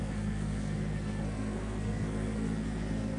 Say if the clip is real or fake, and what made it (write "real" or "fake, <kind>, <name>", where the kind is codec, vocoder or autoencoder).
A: fake, codec, SNAC